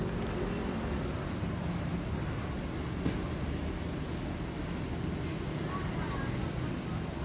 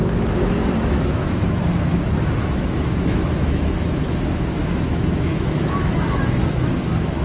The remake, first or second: second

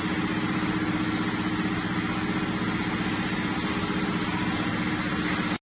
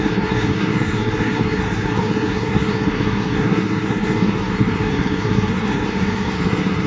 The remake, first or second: second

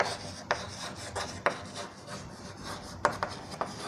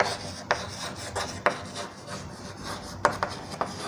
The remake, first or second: first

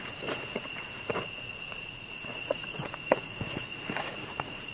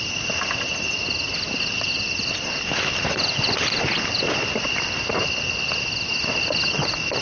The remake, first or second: first